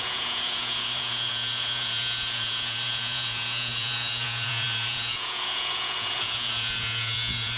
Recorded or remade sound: remade